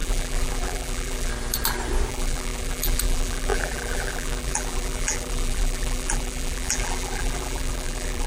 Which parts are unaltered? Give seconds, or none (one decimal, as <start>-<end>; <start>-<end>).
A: 1.3-2.1